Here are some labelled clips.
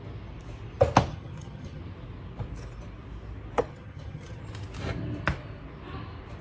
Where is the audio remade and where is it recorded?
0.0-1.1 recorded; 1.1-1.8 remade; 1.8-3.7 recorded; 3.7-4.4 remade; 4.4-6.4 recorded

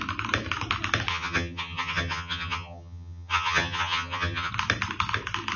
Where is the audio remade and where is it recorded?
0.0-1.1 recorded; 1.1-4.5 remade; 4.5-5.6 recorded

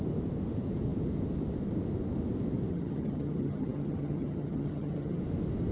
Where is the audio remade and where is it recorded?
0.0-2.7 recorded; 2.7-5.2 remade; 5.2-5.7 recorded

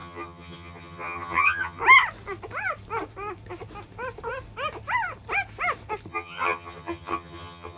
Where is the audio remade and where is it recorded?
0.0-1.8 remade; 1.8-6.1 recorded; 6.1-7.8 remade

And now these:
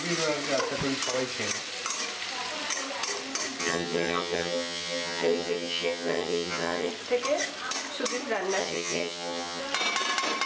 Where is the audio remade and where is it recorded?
0.0-3.6 recorded; 3.6-6.9 remade; 6.9-8.6 recorded; 8.6-9.6 remade; 9.6-10.4 recorded

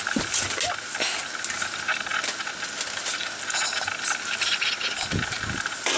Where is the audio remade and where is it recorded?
0.0-6.0 recorded

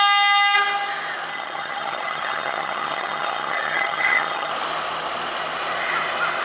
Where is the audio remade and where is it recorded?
0.0-1.3 recorded; 1.3-4.5 remade; 4.5-6.4 recorded

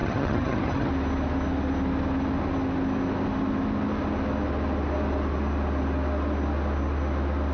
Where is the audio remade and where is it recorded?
0.0-0.9 remade; 0.9-7.5 recorded